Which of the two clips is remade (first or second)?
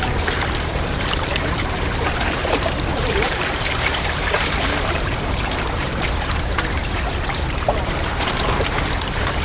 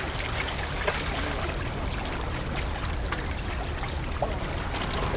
first